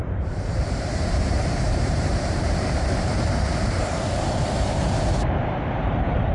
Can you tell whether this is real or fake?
fake